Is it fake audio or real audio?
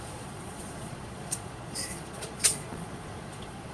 fake